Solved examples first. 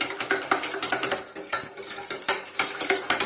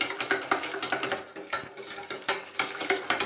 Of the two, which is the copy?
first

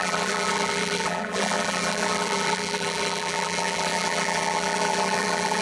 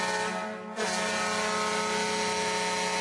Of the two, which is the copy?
first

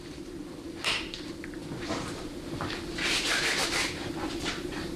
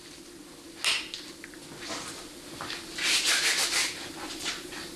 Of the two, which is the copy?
first